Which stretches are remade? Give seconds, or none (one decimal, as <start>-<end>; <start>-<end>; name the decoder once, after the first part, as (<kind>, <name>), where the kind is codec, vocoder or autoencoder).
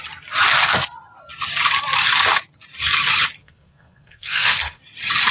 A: 3.4-4.8 (codec, SNAC)